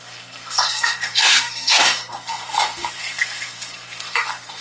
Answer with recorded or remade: remade